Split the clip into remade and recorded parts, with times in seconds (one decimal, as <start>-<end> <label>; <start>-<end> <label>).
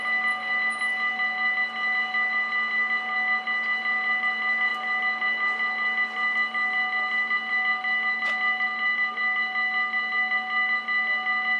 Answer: 0.0-11.6 recorded